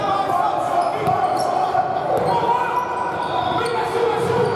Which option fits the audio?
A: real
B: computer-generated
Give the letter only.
A